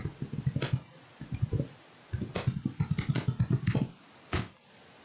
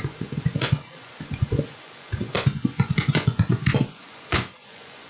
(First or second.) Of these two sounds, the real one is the first